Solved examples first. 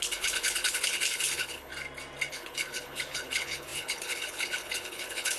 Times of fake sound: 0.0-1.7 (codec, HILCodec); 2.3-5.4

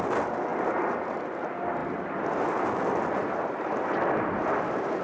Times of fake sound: none

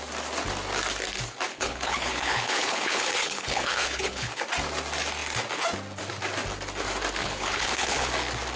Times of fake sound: 1.5-4.4 (codec, HILCodec); 7.2-8.1

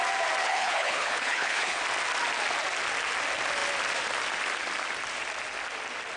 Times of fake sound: 0.4-1.8 (codec, HILCodec)

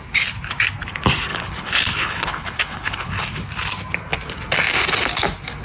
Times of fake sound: 1.3-3.5 (codec, HILCodec)

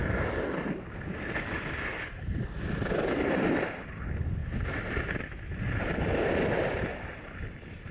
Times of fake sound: none

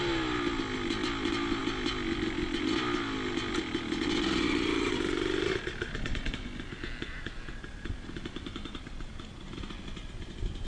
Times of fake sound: none

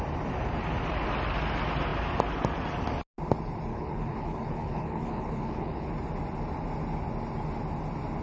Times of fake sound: 3.7-5.9 (codec, HILCodec)